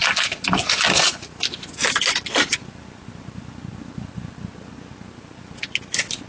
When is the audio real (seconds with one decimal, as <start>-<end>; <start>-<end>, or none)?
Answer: 0.0-6.3